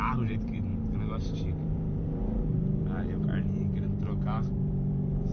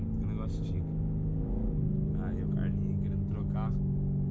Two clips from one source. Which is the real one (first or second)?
second